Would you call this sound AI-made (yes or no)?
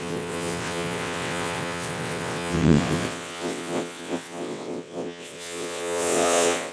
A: yes